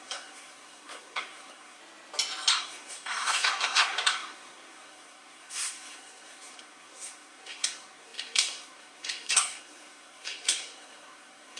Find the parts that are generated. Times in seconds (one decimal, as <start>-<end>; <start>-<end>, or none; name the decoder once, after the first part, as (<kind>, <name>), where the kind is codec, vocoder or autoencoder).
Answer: 0.0-1.8 (codec, SNAC); 2.5-11.6